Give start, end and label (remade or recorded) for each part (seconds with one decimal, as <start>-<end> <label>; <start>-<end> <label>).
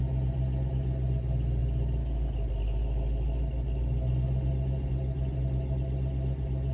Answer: 0.0-6.7 recorded